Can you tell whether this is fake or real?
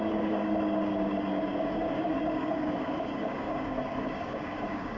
fake